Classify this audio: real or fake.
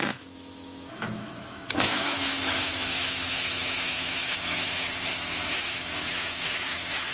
fake